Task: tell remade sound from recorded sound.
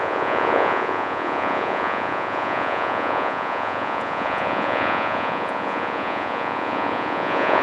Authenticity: remade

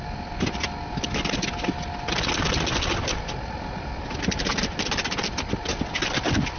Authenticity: recorded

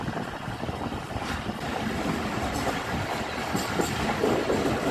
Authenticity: recorded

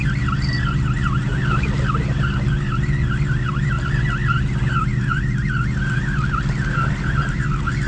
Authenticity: recorded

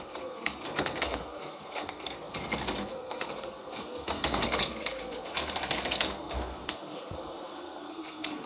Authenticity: remade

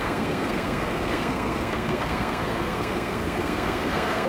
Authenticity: remade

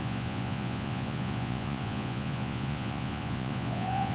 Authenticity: remade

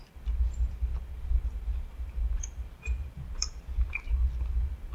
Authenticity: recorded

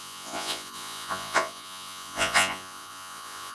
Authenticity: remade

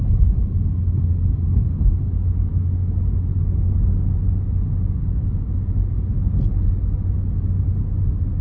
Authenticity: recorded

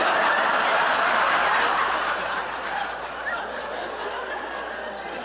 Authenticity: remade